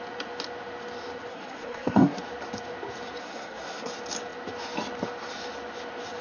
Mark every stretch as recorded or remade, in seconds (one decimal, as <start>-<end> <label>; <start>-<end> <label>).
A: 0.0-1.3 recorded; 1.3-2.2 remade; 2.2-3.2 recorded; 3.2-3.9 remade; 3.9-6.2 recorded